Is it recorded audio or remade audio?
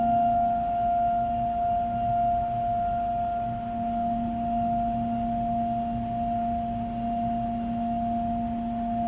recorded